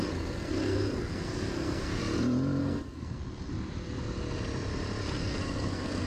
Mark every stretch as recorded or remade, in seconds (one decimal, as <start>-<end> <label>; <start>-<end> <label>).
0.0-2.0 remade; 2.0-2.6 recorded; 2.6-3.5 remade; 3.5-5.2 recorded; 5.2-6.1 remade